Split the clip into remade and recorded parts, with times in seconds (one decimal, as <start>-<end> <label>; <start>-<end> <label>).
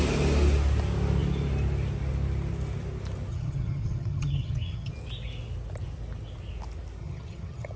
0.0-3.3 recorded; 3.3-4.9 remade; 4.9-7.0 recorded; 7.0-7.8 remade